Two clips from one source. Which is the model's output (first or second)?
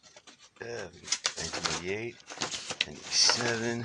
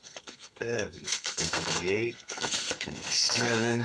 second